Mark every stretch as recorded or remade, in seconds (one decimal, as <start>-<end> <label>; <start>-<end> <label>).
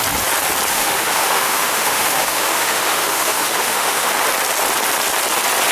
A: 0.0-0.7 recorded; 0.7-4.1 remade; 4.1-5.7 recorded